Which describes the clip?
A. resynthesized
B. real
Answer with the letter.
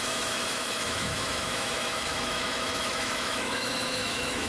A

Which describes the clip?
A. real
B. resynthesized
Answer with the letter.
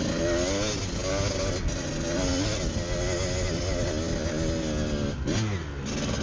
A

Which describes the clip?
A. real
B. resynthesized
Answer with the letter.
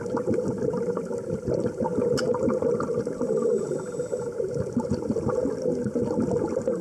A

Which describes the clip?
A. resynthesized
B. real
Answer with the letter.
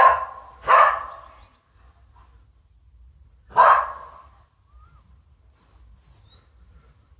B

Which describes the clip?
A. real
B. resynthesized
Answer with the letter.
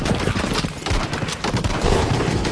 A